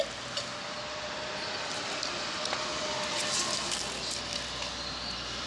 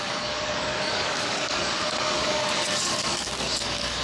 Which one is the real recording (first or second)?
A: first